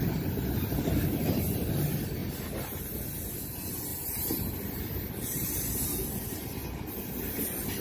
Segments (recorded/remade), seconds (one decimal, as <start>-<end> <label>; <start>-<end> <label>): 0.0-3.9 recorded; 3.9-4.5 remade; 4.5-7.8 recorded

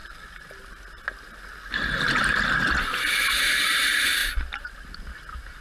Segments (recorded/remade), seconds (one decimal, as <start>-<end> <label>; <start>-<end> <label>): 0.0-3.4 recorded; 3.4-4.2 remade; 4.2-5.6 recorded

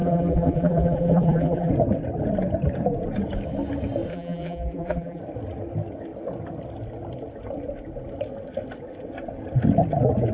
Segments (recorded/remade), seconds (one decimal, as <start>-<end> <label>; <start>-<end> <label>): 0.0-1.7 remade; 1.7-4.1 recorded; 4.1-5.2 remade; 5.2-10.3 recorded

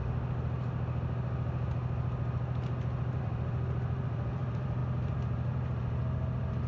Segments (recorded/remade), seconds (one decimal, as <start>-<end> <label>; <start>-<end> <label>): 0.0-3.2 recorded; 3.2-6.7 remade

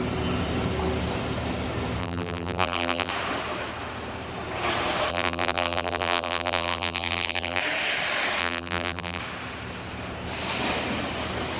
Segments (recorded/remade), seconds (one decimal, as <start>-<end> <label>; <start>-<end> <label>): 0.0-2.0 recorded; 2.0-3.1 remade; 3.1-5.1 recorded; 5.1-7.6 remade; 7.6-8.4 recorded; 8.4-9.2 remade; 9.2-11.6 recorded

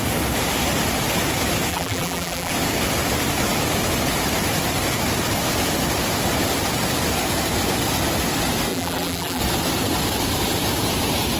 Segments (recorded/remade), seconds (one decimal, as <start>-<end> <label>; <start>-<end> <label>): 0.0-1.7 recorded; 1.7-2.5 remade; 2.5-8.7 recorded; 8.7-9.4 remade; 9.4-11.4 recorded

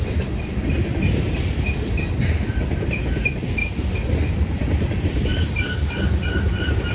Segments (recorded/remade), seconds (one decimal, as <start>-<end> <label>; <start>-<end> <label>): 0.0-6.9 remade